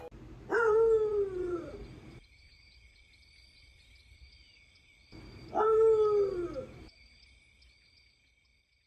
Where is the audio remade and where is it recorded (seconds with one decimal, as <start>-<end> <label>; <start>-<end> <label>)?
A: 0.0-1.1 recorded; 1.1-4.4 remade; 4.4-8.9 recorded